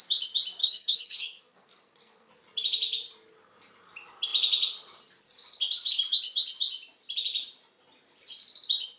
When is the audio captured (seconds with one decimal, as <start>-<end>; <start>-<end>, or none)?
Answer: 0.0-0.6; 2.3-9.0